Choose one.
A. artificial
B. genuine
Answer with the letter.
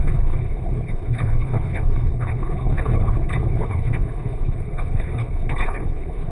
A